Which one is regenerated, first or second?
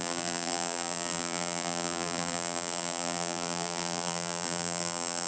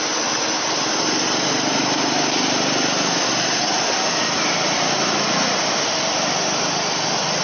first